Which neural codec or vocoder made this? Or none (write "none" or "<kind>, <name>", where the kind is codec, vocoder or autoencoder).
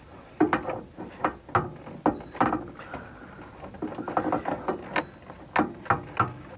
none